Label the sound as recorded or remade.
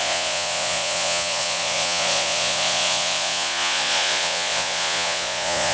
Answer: remade